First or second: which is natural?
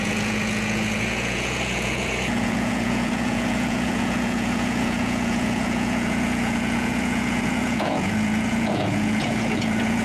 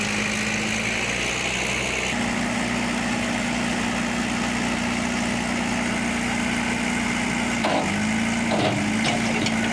second